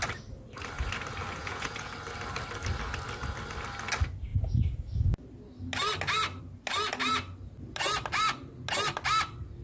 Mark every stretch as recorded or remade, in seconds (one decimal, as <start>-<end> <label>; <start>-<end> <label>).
0.0-1.4 recorded; 1.4-1.9 remade; 1.9-9.6 recorded